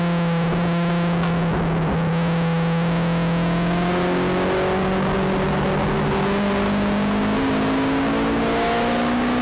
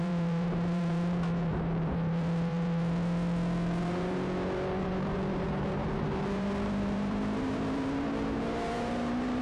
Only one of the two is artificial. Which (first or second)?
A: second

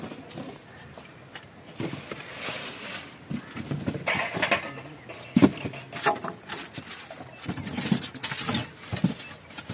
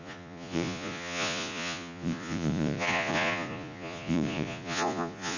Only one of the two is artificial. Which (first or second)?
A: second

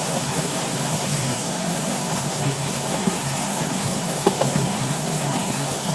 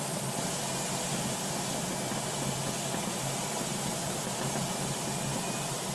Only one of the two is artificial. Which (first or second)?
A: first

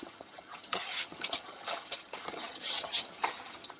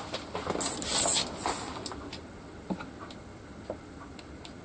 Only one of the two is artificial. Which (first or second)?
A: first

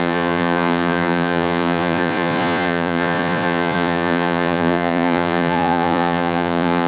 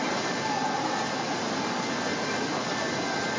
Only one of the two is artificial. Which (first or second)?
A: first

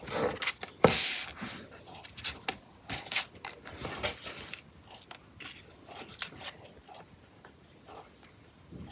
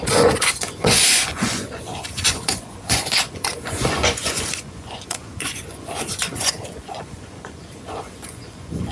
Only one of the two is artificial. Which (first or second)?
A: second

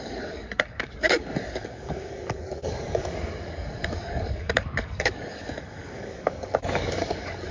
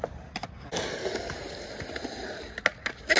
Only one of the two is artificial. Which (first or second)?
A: first